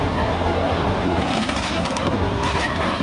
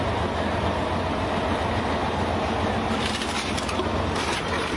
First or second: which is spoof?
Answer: first